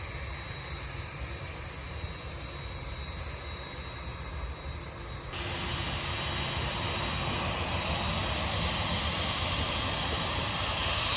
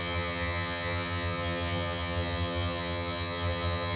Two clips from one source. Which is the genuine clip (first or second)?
first